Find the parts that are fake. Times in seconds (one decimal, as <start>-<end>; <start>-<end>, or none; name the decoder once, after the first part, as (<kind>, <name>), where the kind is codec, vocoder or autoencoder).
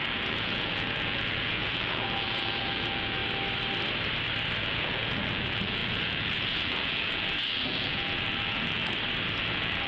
0.0-3.2 (vocoder, Vocos); 4.6-8.8; 9.4-9.9